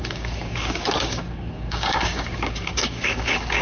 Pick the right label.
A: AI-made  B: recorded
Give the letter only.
A